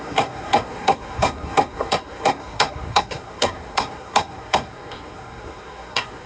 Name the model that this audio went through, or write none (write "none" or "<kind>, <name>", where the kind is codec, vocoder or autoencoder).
codec, SNAC